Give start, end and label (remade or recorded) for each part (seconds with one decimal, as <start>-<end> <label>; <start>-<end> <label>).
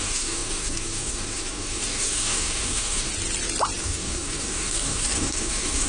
0.0-3.1 remade; 3.1-3.8 recorded; 3.8-5.9 remade